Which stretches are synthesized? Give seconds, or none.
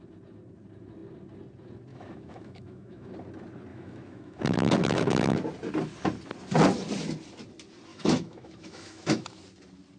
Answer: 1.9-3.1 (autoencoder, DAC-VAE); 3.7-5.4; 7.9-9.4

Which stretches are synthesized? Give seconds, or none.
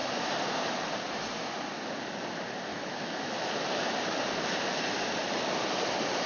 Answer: 2.7-3.3 (autoencoder, DAC-VAE)